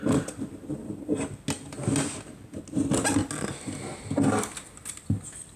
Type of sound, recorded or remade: recorded